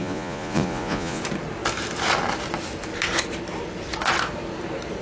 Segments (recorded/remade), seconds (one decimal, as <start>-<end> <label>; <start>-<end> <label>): 0.0-1.2 remade; 1.2-5.0 recorded